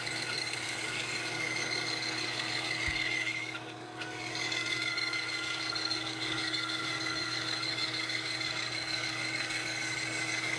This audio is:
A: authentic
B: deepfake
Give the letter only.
B